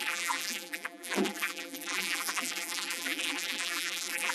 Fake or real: fake